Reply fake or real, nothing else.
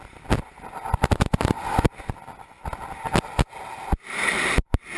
real